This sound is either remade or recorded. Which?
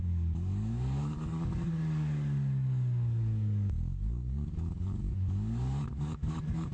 remade